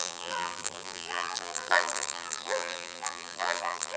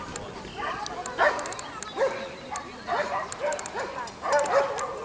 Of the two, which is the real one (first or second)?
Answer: second